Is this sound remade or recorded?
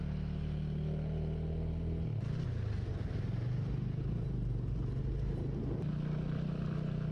recorded